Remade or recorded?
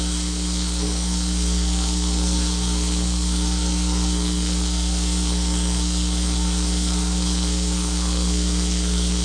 remade